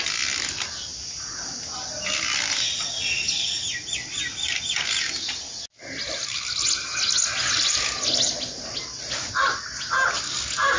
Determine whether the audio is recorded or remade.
recorded